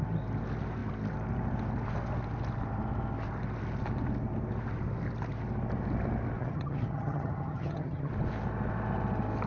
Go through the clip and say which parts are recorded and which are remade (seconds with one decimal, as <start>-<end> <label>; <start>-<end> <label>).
0.0-6.4 recorded; 6.4-8.1 remade; 8.1-9.5 recorded